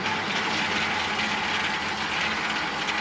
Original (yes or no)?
yes